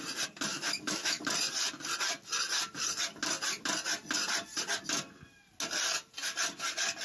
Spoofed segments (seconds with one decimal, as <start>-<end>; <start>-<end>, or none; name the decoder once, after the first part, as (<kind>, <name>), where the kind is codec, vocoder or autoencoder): 0.5-1.2 (autoencoder, DAC-VAE)

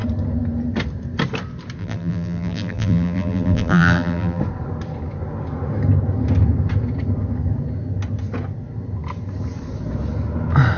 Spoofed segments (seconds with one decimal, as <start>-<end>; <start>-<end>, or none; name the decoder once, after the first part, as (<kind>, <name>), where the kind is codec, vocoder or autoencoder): 1.8-4.4 (vocoder, BigVGAN v2)

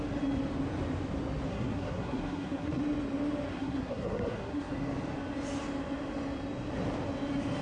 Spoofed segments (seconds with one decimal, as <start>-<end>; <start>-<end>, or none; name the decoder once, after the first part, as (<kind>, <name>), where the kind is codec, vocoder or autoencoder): 1.5-2.8 (codec, SNAC); 3.5-4.7

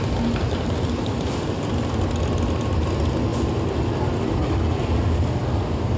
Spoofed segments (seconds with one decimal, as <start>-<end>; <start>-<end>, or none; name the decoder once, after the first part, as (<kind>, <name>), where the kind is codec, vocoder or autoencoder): none